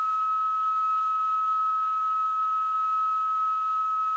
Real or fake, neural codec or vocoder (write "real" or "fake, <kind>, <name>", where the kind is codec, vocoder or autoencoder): fake, codec, SNAC